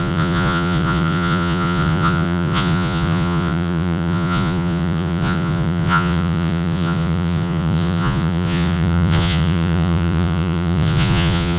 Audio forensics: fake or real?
fake